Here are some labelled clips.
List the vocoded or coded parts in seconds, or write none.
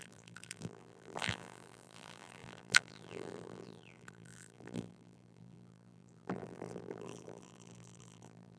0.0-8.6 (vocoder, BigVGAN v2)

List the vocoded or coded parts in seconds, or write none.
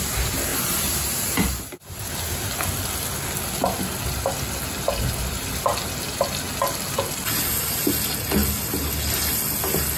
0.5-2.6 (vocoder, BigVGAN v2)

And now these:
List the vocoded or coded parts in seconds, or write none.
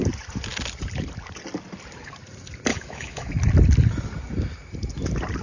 2.7-3.3 (autoencoder, DAC-VAE)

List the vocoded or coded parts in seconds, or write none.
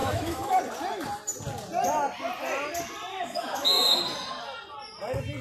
0.0-0.6 (autoencoder, DAC-VAE); 3.1-4.0